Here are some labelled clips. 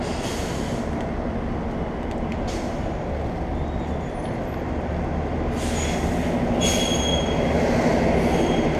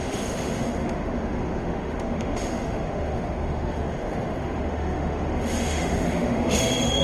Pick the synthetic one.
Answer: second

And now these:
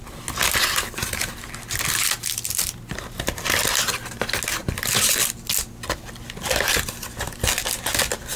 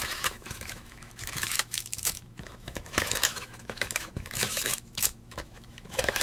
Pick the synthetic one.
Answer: second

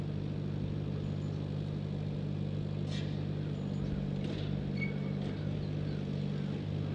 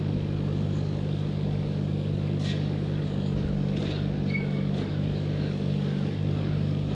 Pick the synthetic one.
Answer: second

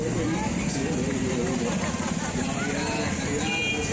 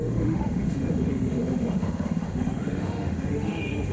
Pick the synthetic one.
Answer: second